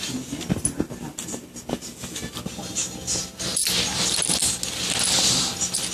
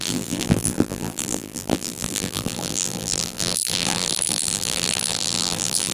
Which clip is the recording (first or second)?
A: first